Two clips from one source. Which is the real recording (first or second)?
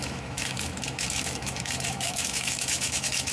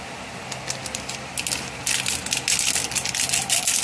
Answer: second